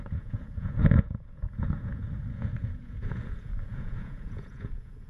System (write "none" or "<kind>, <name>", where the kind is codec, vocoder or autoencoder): vocoder, Vocos